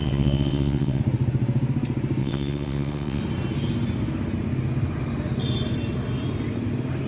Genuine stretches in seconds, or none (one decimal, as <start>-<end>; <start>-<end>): 1.0-2.2; 3.2-7.1